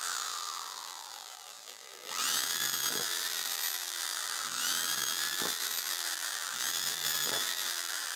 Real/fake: fake